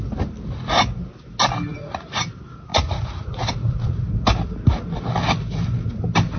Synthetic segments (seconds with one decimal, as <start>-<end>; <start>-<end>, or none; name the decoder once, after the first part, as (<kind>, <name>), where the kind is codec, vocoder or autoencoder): 1.7-2.2 (vocoder, Vocos); 2.7-4.1